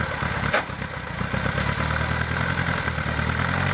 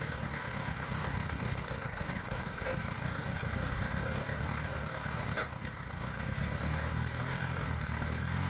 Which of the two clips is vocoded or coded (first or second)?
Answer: second